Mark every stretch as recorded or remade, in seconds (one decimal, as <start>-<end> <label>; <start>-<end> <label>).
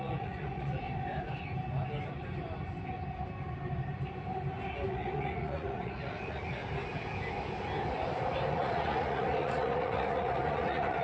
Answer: 0.0-0.8 remade; 0.8-4.9 recorded; 4.9-6.6 remade; 6.6-8.5 recorded; 8.5-11.0 remade